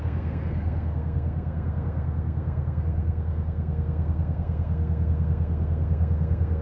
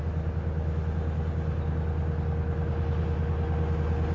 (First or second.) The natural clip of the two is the second